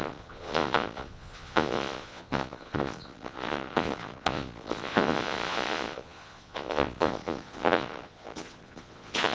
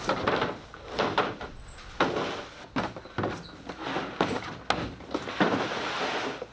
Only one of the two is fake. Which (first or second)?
first